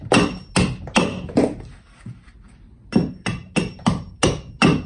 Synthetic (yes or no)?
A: no